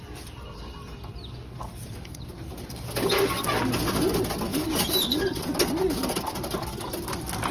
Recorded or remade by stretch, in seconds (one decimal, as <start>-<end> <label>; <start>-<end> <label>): 0.0-1.7 recorded; 1.7-2.7 remade; 2.7-4.5 recorded; 4.5-5.5 remade; 5.5-7.5 recorded